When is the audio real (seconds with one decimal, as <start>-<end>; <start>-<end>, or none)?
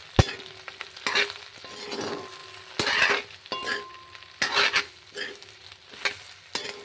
0.0-6.8